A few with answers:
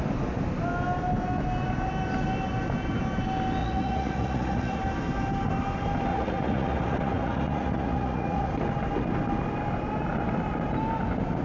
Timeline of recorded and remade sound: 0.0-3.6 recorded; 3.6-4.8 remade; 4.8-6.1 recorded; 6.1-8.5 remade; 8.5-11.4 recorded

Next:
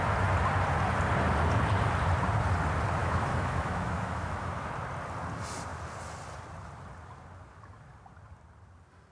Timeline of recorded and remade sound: 0.0-3.0 recorded; 3.0-4.7 remade; 4.7-9.1 recorded

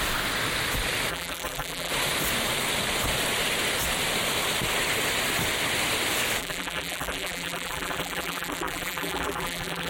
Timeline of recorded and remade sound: 0.0-1.1 recorded; 1.1-1.9 remade; 1.9-6.4 recorded; 6.4-9.9 remade

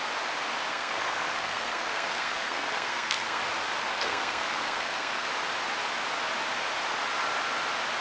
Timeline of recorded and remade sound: 0.0-0.7 recorded; 0.7-3.4 remade; 3.4-3.9 recorded; 3.9-5.3 remade; 5.3-8.0 recorded

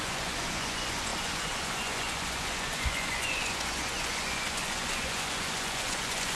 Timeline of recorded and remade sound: 0.0-6.3 remade

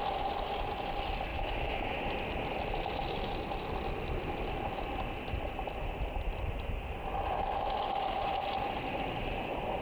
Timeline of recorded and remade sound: 0.0-1.3 recorded; 1.3-2.0 remade; 2.0-9.8 recorded

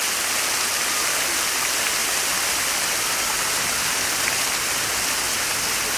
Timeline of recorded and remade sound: 0.0-6.0 recorded